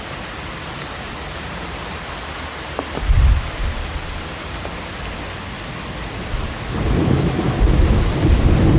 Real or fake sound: real